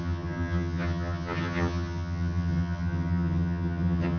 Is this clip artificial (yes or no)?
yes